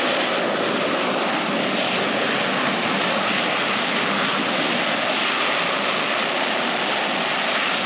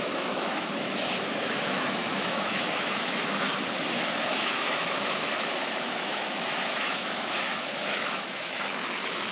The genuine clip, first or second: first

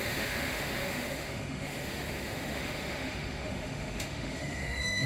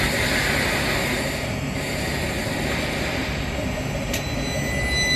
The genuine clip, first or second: second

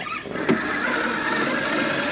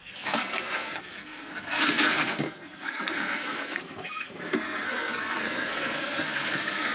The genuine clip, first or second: first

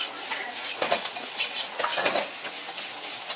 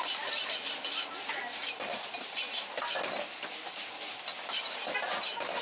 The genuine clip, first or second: second